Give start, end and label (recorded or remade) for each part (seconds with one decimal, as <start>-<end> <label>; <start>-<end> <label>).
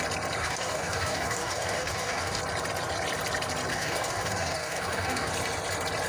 0.0-0.4 recorded; 0.4-2.4 remade; 2.4-3.7 recorded; 3.7-5.3 remade; 5.3-6.1 recorded